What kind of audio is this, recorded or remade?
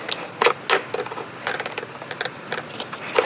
recorded